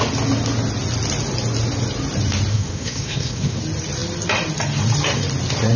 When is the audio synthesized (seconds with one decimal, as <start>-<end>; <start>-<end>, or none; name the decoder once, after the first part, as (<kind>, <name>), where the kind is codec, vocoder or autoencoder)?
2.5-3.6 (codec, SNAC)